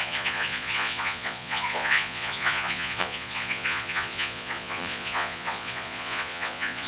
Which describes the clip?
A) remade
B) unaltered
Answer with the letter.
A